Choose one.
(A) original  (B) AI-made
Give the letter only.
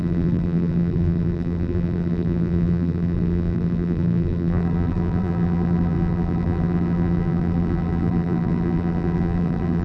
B